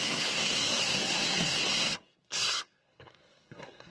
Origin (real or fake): fake